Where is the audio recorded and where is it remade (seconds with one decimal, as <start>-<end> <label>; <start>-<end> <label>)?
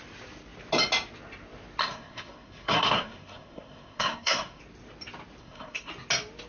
0.0-1.8 recorded; 1.8-4.6 remade; 4.6-5.4 recorded; 5.4-5.9 remade; 5.9-6.5 recorded